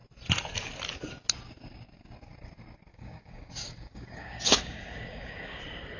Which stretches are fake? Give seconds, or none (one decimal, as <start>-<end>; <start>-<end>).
2.9-5.6